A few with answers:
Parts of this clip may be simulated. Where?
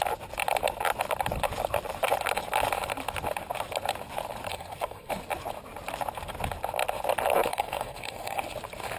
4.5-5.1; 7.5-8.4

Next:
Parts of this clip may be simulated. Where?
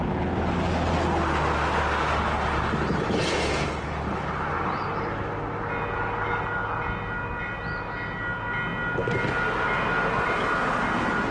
none